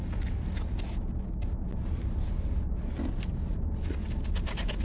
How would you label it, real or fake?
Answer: real